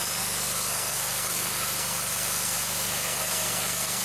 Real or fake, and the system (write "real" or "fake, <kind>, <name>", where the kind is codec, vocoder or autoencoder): fake, codec, SNAC